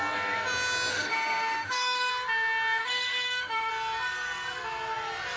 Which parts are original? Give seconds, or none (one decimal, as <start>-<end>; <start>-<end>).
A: 0.0-0.9; 2.1-2.8; 3.7-5.4